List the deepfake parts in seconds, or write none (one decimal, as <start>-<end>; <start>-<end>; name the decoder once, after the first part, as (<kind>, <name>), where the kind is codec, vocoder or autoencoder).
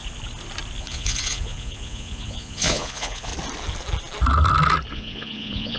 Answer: 0.8-3.3 (vocoder, Vocos); 4.9-5.8